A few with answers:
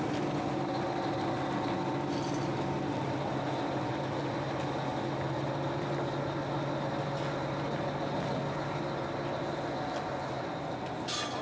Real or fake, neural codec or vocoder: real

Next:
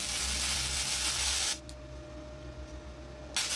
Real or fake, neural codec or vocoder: real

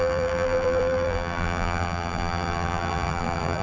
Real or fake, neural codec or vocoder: fake, vocoder, BigVGAN v2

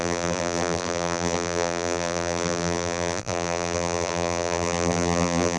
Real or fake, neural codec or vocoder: fake, vocoder, BigVGAN v2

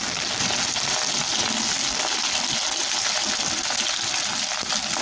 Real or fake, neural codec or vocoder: real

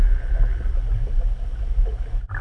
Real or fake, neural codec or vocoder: real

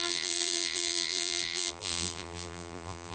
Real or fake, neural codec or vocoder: fake, vocoder, BigVGAN v2